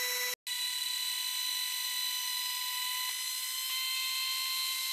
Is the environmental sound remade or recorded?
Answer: recorded